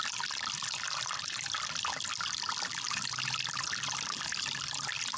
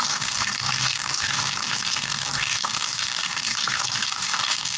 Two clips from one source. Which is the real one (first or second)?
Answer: first